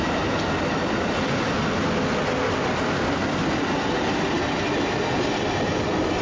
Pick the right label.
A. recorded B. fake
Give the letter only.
A